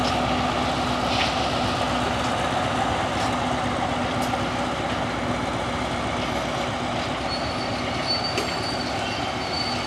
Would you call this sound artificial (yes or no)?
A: no